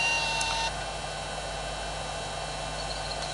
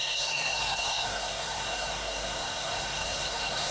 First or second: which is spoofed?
second